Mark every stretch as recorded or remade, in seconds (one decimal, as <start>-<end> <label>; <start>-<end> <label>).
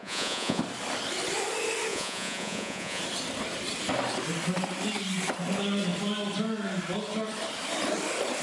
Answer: 0.0-0.6 remade; 0.6-1.9 recorded; 1.9-3.0 remade; 3.0-8.4 recorded